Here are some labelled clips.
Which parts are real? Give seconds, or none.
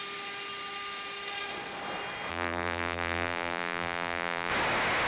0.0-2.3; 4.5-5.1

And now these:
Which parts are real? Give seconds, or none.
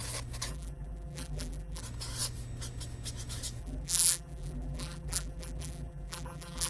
0.0-0.5; 1.8-3.6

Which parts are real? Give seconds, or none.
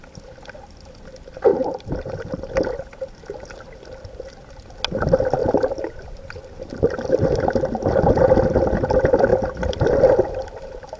0.0-1.5; 2.5-5.4; 7.6-11.0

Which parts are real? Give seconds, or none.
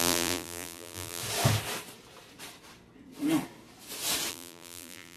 1.2-4.3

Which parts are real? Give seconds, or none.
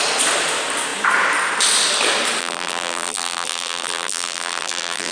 0.0-2.4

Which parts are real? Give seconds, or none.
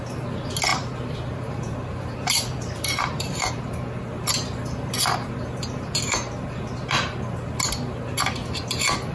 0.0-0.7; 3.5-9.1